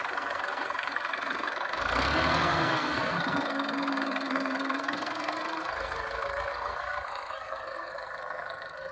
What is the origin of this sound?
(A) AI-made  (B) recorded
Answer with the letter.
A